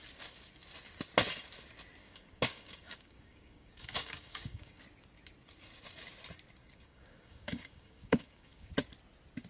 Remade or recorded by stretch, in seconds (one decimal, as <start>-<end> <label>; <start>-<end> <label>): 0.0-2.0 recorded; 2.0-4.8 remade; 4.8-6.6 recorded; 6.6-8.7 remade; 8.7-9.5 recorded